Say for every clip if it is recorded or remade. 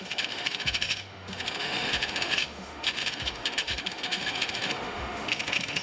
remade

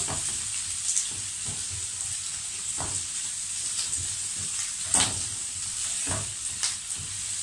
recorded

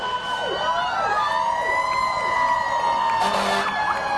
recorded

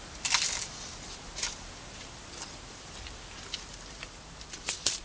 remade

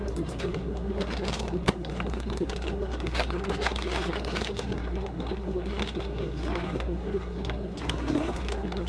remade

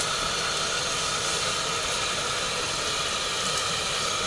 recorded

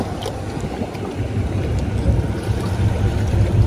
recorded